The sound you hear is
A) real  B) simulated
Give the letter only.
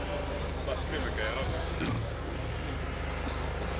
A